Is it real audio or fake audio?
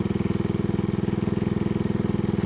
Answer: real